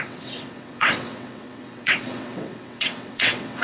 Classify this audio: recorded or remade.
remade